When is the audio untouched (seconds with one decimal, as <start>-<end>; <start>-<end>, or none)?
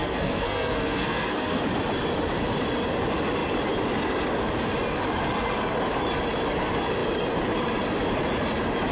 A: 1.6-8.9